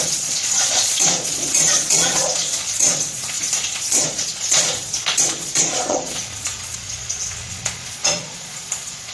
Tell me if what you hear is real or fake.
fake